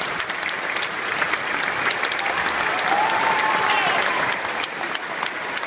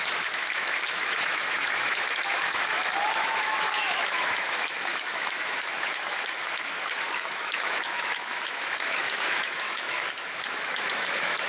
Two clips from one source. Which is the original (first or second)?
first